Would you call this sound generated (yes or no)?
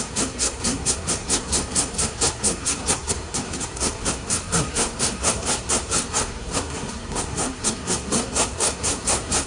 yes